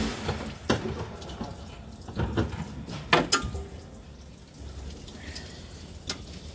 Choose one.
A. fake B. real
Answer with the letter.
B